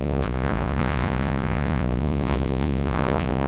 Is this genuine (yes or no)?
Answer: no